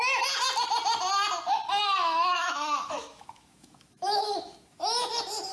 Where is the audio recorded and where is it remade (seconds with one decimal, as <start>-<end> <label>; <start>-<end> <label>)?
0.0-1.8 recorded; 1.8-5.1 remade; 5.1-5.5 recorded